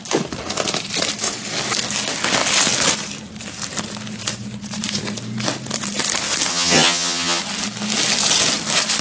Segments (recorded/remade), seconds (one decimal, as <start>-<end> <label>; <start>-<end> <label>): 0.0-6.5 recorded; 6.5-7.4 remade; 7.4-9.0 recorded